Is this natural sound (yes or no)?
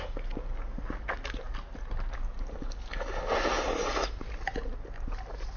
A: yes